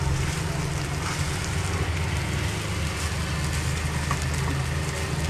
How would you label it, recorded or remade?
recorded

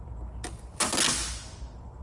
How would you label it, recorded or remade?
recorded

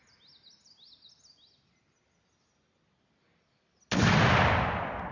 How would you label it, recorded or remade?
recorded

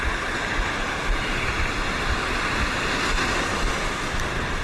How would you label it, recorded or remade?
recorded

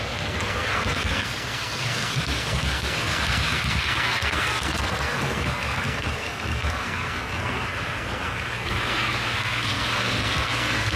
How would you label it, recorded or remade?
remade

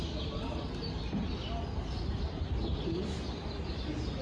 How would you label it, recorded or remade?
recorded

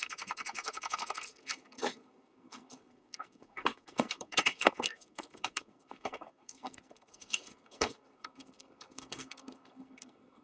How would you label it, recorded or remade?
remade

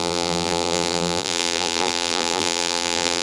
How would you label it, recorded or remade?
remade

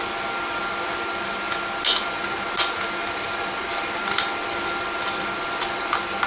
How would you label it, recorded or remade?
recorded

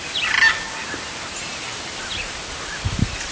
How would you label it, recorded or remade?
recorded